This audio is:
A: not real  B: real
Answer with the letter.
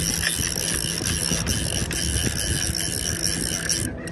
B